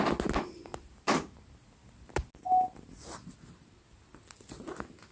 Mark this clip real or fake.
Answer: real